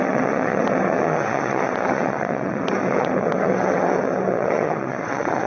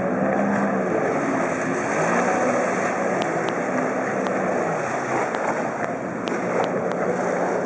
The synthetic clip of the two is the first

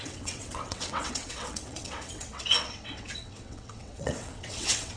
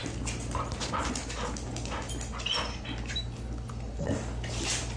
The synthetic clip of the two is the first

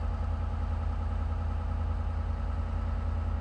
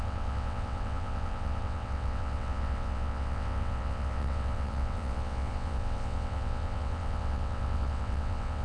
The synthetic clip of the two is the second